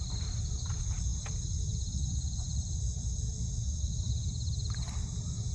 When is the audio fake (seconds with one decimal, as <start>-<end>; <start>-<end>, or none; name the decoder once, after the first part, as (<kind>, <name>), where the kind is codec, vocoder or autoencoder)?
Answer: none